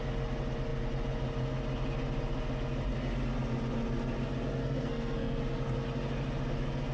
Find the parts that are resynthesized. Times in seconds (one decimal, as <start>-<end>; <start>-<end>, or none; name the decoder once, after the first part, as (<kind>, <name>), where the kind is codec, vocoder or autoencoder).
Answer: 4.6-5.4 (codec, SNAC)